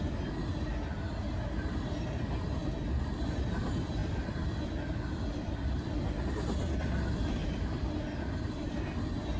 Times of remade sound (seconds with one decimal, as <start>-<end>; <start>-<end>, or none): 4.0-6.3; 7.4-7.9